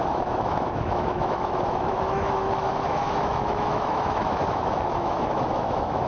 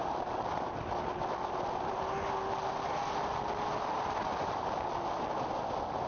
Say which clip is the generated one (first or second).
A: first